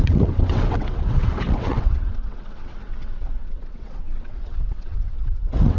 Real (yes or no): no